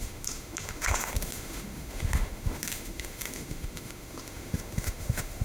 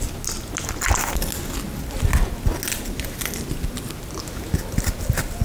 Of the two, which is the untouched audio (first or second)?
second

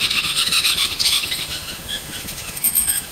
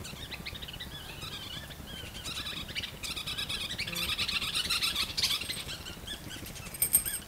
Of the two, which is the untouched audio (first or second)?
second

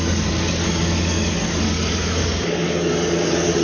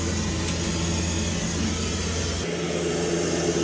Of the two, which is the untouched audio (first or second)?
second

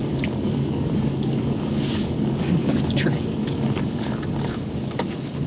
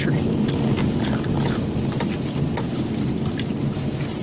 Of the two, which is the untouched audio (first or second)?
second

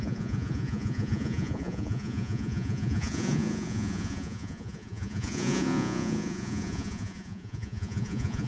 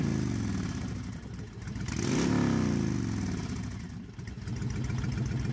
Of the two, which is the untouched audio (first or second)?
second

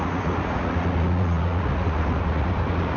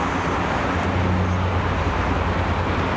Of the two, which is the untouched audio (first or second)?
second